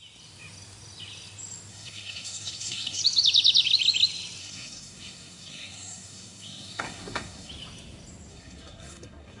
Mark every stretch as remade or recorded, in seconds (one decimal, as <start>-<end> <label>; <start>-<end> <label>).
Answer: 0.0-1.7 recorded; 1.7-3.0 remade; 3.0-4.4 recorded; 4.4-7.5 remade; 7.5-8.3 recorded; 8.3-9.4 remade